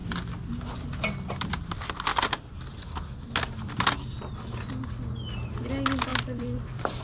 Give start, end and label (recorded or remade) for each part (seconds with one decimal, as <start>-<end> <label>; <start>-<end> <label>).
0.0-6.1 recorded; 6.1-7.0 remade